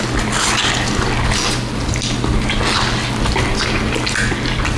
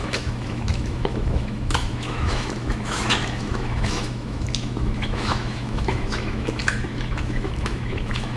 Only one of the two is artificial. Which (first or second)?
second